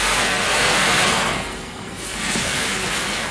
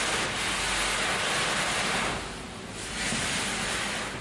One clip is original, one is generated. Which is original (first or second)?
second